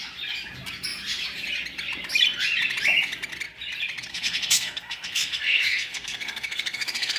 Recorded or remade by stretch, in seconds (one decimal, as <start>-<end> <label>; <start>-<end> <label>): 0.0-4.1 recorded; 4.1-7.2 remade